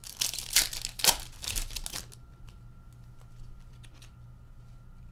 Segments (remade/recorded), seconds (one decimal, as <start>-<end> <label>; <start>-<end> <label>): 0.0-5.1 recorded